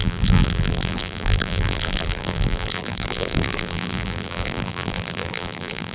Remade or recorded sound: remade